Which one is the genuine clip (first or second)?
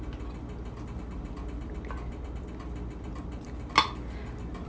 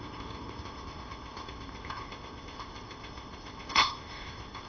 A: first